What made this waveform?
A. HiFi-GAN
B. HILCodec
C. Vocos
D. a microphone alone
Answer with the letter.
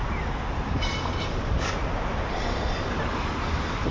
D